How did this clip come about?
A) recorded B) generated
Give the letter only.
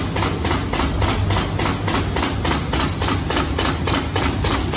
A